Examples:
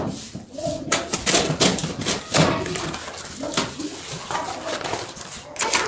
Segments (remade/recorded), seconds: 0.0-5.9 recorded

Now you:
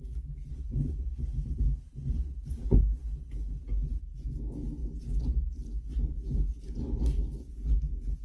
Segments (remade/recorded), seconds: 0.0-0.5 recorded; 0.5-4.0 remade; 4.0-8.2 recorded

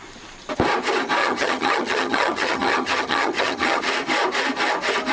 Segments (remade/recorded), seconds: 0.0-1.2 recorded; 1.2-3.8 remade; 3.8-5.1 recorded